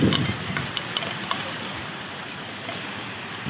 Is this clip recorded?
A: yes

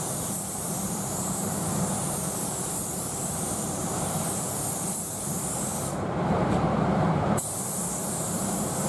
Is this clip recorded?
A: no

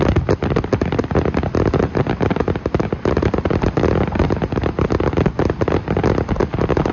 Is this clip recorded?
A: yes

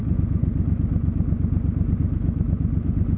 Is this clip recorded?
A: yes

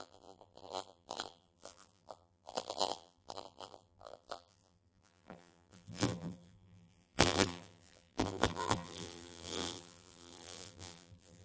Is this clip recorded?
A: no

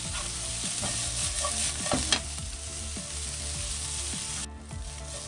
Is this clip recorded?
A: yes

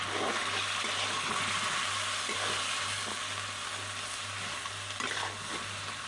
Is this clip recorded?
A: yes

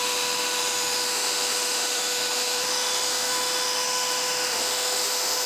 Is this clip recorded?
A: no